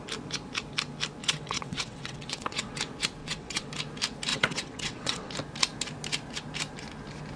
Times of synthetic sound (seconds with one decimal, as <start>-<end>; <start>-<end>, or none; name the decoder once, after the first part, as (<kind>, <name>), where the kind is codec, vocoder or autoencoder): 1.2-2.8 (vocoder, WaveNeXt); 3.2-3.7; 4.3-5.3